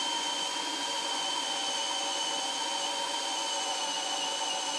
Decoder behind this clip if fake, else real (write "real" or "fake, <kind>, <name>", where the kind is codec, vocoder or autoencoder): fake, vocoder, Vocos